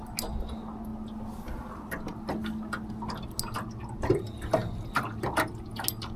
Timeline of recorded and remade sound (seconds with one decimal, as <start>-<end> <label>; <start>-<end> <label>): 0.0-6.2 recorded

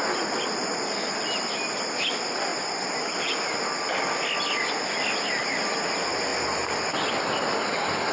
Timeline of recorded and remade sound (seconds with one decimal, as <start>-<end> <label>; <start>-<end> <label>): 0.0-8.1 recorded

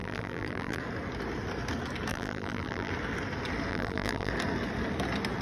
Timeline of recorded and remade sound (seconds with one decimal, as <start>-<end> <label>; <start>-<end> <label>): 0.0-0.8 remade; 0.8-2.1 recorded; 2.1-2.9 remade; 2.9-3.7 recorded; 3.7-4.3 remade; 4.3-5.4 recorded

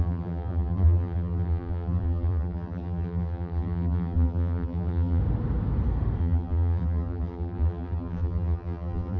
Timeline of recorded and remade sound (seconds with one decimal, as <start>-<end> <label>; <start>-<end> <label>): 0.0-5.2 remade; 5.2-6.2 recorded; 6.2-9.2 remade

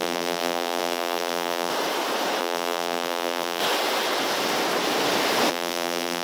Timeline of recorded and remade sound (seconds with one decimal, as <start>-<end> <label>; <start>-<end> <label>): 0.0-1.7 remade; 1.7-2.4 recorded; 2.4-3.6 remade; 3.6-5.5 recorded; 5.5-6.2 remade

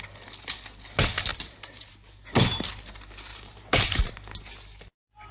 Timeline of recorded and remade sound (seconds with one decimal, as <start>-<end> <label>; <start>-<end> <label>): 0.0-1.3 recorded; 1.3-1.9 remade; 1.9-3.3 recorded; 3.3-4.0 remade; 4.0-5.3 recorded